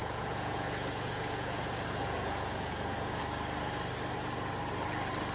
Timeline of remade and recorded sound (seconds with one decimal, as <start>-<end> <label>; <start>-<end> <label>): 0.0-3.2 remade; 3.2-5.3 recorded